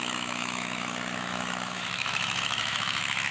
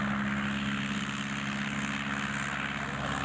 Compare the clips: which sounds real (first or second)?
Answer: second